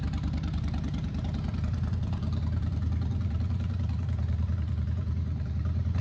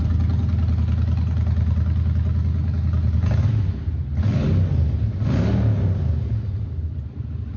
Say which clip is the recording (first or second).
second